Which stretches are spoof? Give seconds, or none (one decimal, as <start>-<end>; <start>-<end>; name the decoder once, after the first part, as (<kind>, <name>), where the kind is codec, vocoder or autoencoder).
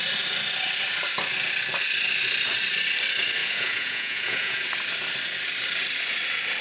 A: 3.4-4.6 (vocoder, Vocos)